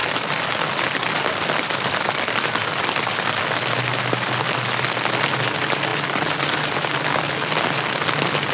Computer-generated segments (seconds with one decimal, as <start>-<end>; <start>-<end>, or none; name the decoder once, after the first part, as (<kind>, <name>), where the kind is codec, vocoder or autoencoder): 0.0-3.4 (vocoder, BigVGAN v2)